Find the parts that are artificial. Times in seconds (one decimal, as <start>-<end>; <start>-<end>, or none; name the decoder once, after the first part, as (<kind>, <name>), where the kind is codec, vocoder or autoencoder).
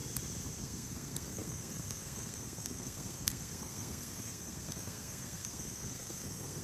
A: 0.6-6.6 (codec, SNAC)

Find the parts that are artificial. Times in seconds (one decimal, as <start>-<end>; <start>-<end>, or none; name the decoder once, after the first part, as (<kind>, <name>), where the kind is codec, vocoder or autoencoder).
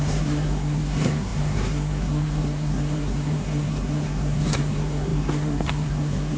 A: 0.0-6.4 (codec, SNAC)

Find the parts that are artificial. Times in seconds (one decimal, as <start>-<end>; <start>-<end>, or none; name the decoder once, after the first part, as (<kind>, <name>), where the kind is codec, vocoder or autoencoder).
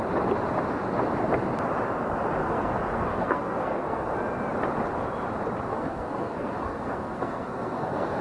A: 2.4-4.1 (codec, SNAC); 5.7-8.2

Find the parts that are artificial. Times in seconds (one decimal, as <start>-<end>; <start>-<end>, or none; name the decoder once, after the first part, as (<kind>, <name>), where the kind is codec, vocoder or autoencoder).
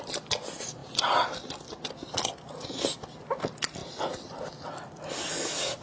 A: none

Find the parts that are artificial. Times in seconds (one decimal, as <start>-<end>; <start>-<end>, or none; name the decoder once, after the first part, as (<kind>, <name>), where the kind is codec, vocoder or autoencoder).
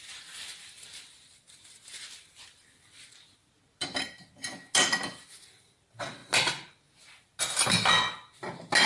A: none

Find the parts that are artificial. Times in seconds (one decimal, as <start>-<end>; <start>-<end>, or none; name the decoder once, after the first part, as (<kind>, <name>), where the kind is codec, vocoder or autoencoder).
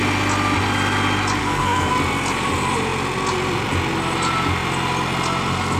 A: 1.4-1.9 (codec, SNAC)